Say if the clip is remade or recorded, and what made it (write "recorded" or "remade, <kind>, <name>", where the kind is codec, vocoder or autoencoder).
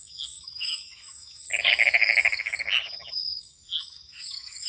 remade, autoencoder, DAC-VAE